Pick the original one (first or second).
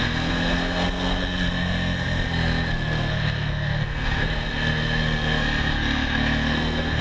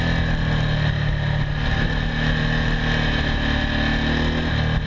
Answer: second